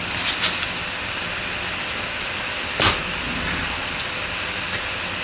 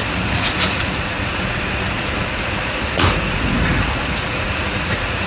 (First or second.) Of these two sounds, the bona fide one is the first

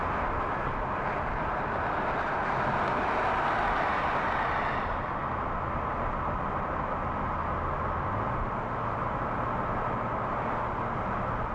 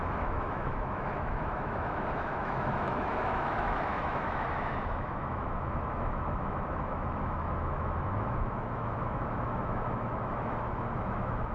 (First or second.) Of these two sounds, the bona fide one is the first